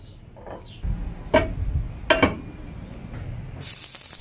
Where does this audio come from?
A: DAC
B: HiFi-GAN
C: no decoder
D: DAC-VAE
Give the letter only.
C